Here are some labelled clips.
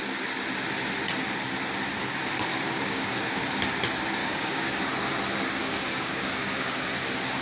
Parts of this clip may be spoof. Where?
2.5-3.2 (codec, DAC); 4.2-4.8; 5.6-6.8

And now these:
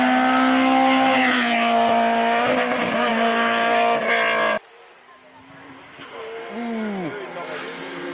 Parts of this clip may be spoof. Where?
3.1-4.1 (codec, DAC)

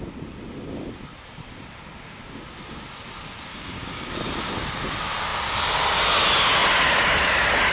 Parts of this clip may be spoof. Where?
3.5-4.1 (codec, DAC)

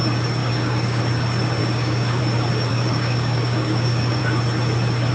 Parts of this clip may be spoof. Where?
0.4-1.0 (codec, DAC); 1.6-2.2; 2.7-4.2

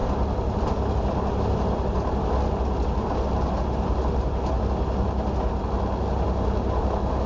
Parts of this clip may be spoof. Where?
none

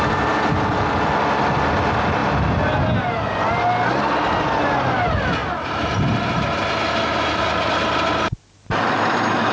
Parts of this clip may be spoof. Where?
none

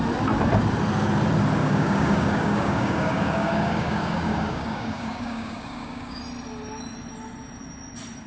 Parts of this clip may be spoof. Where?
1.6-6.2 (codec, DAC)